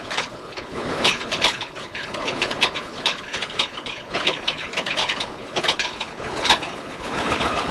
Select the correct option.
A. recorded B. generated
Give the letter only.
B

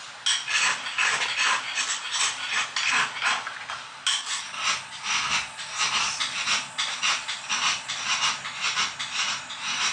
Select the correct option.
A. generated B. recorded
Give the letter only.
B